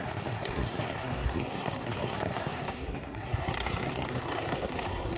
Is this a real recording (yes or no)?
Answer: no